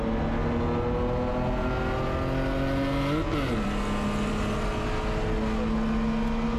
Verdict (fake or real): real